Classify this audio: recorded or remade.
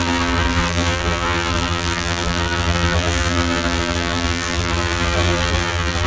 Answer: remade